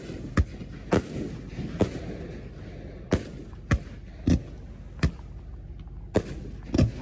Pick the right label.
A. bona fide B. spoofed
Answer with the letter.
A